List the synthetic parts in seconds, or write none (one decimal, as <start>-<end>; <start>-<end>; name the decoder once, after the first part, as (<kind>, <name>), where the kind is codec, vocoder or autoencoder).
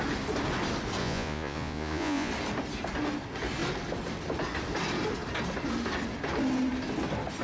1.0-2.3 (vocoder, Vocos)